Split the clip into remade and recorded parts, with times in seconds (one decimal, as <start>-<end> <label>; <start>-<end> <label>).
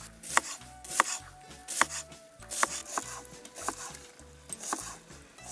0.0-5.5 recorded